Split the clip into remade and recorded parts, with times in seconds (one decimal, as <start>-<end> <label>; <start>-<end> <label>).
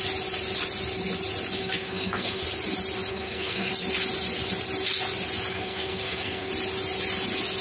0.0-1.6 recorded; 1.6-2.4 remade; 2.4-3.1 recorded; 3.1-3.7 remade; 3.7-5.5 recorded; 5.5-6.5 remade; 6.5-7.6 recorded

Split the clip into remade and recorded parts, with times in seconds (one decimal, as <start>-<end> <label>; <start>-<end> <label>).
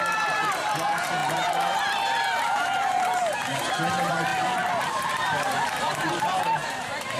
0.0-4.3 remade; 4.3-4.9 recorded; 4.9-7.2 remade